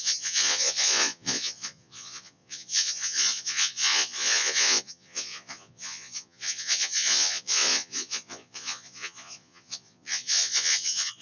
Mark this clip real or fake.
fake